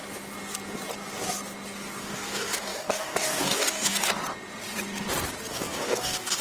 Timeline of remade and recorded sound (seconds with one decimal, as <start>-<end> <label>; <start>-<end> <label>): 0.0-2.0 recorded; 2.0-3.9 remade; 3.9-5.5 recorded; 5.5-6.4 remade